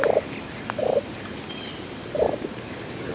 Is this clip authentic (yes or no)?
yes